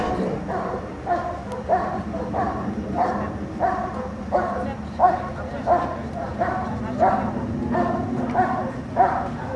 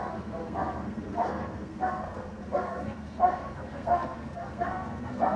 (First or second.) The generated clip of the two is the second